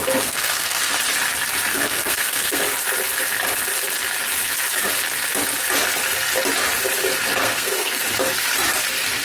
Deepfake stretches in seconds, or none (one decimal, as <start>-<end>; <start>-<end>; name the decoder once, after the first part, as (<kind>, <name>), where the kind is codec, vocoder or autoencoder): 0.0-0.9 (codec, SNAC); 1.7-2.6; 7.4-8.0